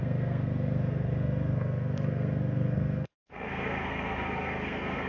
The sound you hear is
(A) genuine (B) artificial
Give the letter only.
B